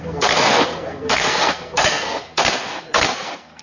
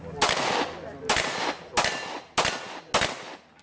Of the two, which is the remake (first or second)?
first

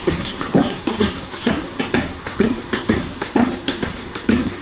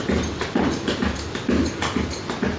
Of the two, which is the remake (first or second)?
first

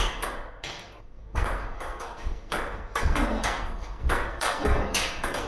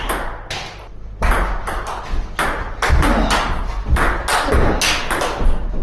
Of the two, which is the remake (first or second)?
first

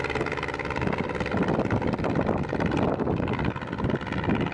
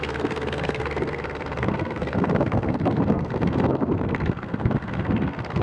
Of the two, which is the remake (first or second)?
second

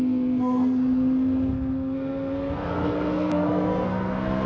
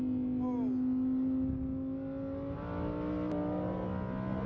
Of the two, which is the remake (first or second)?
first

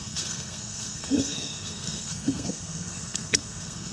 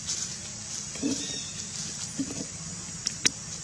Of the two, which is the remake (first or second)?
first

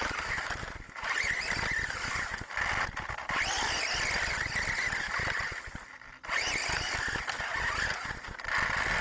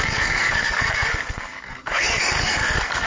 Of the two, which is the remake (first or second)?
second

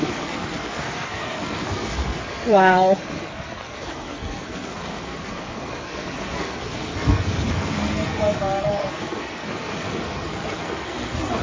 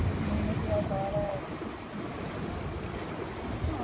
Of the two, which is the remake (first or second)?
first